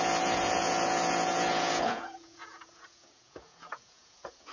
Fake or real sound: fake